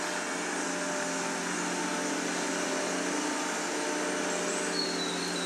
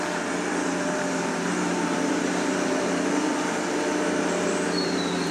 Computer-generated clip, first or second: second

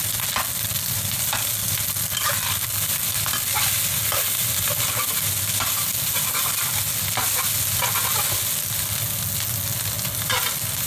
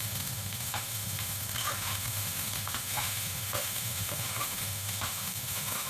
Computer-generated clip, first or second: second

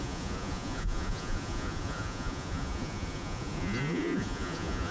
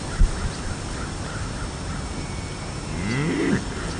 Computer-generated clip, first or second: first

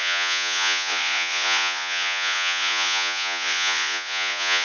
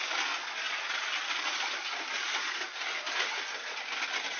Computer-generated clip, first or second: first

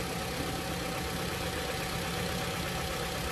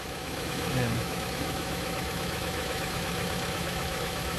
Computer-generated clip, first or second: second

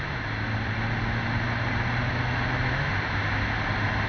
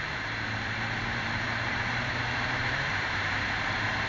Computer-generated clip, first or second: second